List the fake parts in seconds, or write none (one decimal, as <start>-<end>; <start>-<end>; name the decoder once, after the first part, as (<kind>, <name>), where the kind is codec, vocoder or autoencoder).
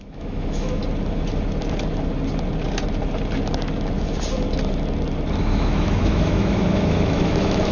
0.0-0.8 (autoencoder, DAC-VAE); 5.4-7.7